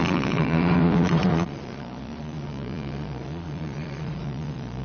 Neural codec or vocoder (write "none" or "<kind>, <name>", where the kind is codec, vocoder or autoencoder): vocoder, Vocos